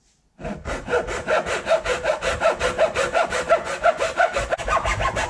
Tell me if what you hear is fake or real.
real